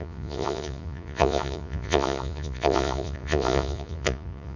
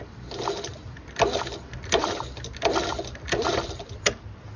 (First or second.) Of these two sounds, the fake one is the first